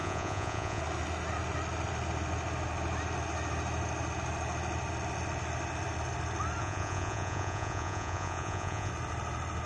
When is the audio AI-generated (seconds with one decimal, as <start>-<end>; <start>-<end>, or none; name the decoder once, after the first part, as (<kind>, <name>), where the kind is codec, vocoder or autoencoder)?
0.0-0.8 (vocoder, Vocos); 6.6-8.9